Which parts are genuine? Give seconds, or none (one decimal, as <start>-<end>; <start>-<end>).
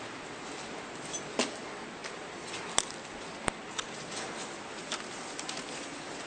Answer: 0.0-6.3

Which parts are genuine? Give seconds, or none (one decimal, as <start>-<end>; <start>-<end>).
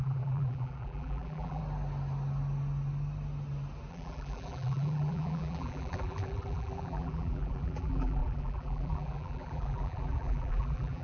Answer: 1.6-3.9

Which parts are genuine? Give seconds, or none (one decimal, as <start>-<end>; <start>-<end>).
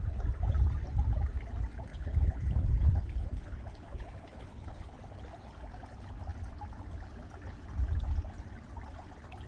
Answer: 0.0-1.9; 5.0-9.5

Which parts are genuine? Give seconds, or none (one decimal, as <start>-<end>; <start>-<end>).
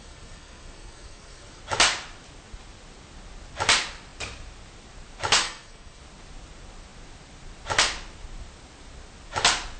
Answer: 1.6-5.4; 6.0-9.8